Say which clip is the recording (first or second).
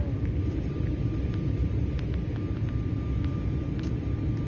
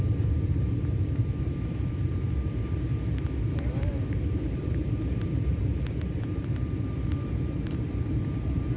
first